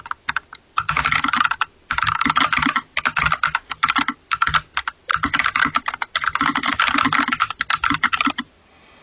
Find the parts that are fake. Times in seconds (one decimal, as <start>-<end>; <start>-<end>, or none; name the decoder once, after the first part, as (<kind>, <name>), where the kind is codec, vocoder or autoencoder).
none